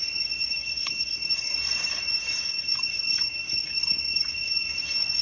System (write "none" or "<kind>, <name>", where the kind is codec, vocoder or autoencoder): codec, DAC